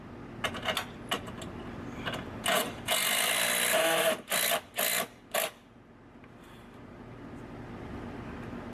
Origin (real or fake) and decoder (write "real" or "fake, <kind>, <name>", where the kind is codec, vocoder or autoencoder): real